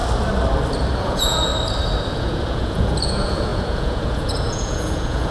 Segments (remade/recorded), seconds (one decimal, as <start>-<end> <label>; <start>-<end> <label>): 0.0-1.0 recorded; 1.0-1.5 remade; 1.5-2.1 recorded; 2.1-5.3 remade